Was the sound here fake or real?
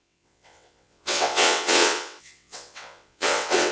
fake